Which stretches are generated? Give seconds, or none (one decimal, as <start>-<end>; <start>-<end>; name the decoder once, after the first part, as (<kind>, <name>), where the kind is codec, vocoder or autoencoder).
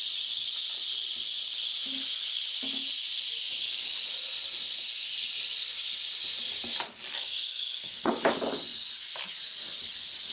7.1-8.1 (codec, SNAC)